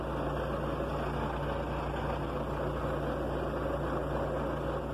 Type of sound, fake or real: real